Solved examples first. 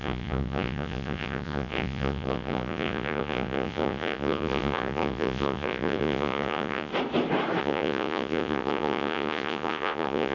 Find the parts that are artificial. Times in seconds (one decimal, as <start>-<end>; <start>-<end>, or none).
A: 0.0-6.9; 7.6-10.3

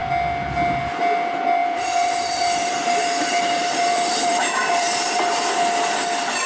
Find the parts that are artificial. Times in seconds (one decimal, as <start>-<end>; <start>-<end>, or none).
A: 1.6-5.5

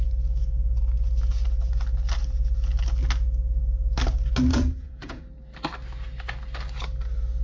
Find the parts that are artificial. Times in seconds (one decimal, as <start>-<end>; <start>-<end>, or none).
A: 4.5-5.2

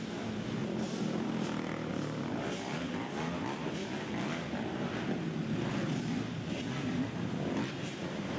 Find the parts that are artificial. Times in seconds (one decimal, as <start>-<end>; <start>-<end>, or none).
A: 0.6-1.9